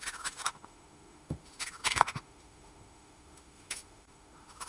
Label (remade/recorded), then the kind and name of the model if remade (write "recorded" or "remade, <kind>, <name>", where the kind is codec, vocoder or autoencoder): remade, autoencoder, DAC-VAE